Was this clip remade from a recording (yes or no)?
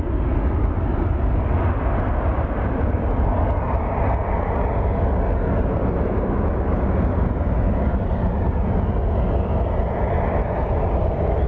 no